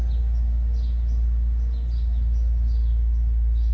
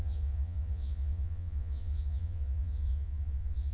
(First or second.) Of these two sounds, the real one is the first